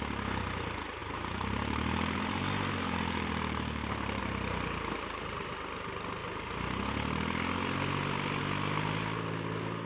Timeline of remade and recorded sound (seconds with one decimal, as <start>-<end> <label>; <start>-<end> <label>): 0.0-1.0 recorded; 1.0-4.2 remade; 4.2-9.9 recorded